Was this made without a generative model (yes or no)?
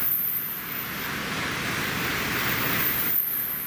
yes